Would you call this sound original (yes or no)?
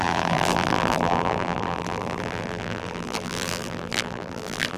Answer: no